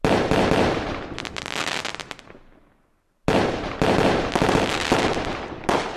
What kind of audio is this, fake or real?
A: real